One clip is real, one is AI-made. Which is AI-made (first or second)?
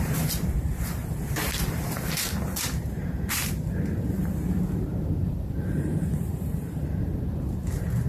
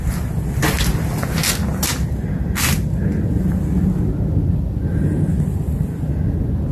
first